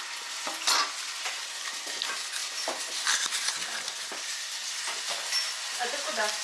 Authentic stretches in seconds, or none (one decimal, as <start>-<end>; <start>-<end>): 0.0-6.4